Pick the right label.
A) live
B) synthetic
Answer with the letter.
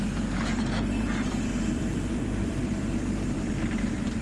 B